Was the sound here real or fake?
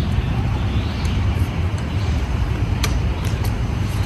fake